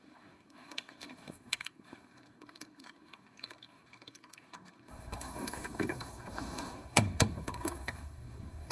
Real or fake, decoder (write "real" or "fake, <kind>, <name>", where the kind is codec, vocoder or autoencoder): fake, codec, SNAC